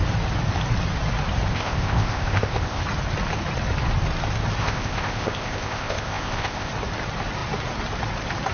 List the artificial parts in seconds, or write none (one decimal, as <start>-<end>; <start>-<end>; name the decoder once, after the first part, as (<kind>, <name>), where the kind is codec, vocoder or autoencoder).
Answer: 1.5-2.8 (codec, ZipCodec); 4.6-6.7